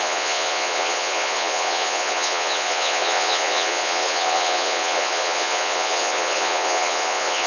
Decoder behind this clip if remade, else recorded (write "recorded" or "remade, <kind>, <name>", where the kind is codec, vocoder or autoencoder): remade, vocoder, Vocos